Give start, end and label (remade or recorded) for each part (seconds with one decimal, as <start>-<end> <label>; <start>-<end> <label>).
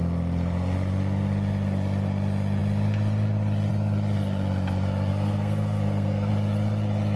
0.0-5.1 recorded; 5.1-6.3 remade; 6.3-7.2 recorded